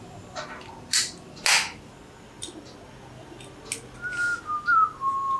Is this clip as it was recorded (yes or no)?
yes